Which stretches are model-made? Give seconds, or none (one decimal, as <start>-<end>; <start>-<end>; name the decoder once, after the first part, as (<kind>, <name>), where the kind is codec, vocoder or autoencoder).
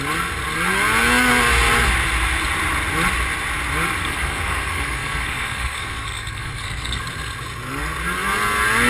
4.0-7.0 (codec, SNAC)